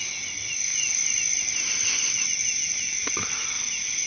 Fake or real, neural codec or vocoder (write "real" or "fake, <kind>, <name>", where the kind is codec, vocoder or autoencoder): real